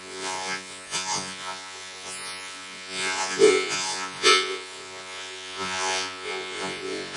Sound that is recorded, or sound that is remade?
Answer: remade